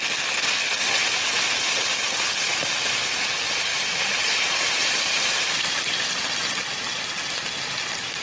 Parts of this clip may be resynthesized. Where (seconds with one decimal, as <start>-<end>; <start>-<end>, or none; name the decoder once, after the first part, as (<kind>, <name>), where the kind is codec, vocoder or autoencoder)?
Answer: 3.7-6.3 (vocoder, BigVGAN v2)